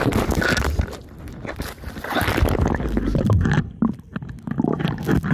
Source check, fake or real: real